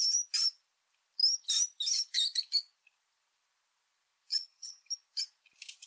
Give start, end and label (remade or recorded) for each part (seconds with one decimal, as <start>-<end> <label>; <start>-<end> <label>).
0.0-4.3 recorded; 4.3-4.9 remade; 4.9-5.9 recorded